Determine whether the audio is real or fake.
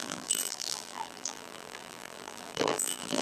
fake